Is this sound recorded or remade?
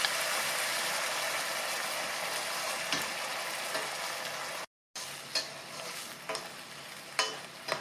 recorded